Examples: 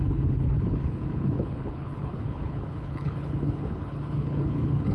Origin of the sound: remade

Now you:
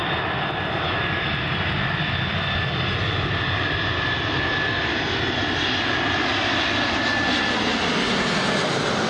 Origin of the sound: recorded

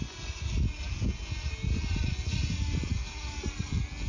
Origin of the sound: recorded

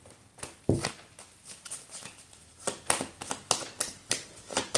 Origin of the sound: recorded